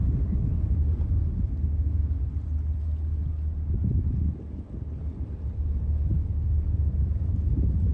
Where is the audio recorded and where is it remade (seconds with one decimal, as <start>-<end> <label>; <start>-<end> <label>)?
0.0-7.9 recorded